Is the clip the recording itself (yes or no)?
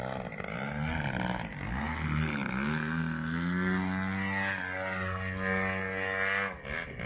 yes